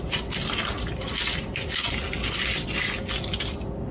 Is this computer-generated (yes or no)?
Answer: no